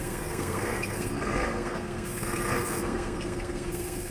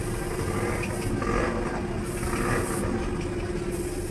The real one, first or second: second